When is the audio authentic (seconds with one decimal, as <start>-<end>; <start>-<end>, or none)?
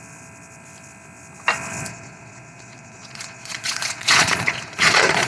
0.0-1.9